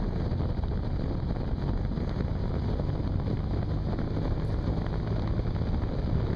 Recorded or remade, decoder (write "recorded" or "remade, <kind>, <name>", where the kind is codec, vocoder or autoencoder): recorded